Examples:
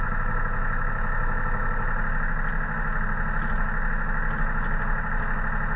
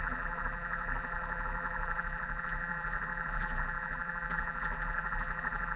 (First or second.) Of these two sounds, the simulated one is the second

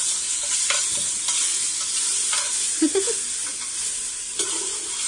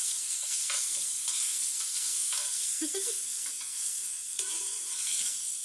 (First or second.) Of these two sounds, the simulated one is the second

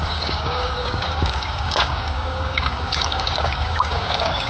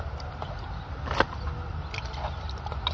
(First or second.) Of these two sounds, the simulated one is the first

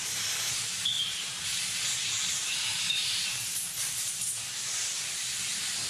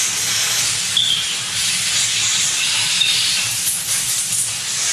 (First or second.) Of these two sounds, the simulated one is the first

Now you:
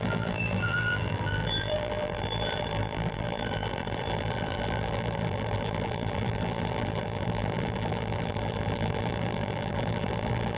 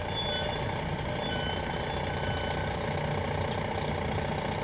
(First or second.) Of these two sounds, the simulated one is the first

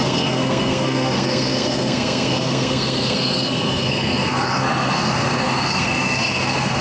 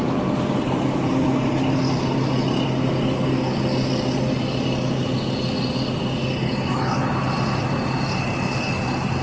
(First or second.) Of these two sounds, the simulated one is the first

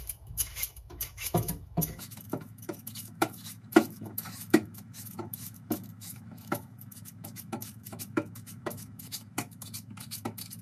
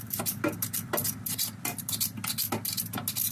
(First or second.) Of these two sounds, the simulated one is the first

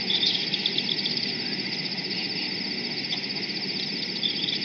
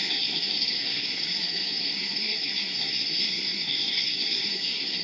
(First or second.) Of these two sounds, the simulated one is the second